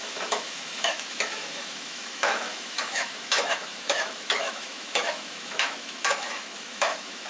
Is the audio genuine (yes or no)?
no